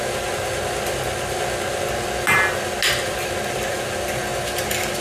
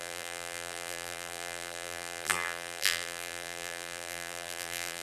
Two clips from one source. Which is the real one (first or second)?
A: first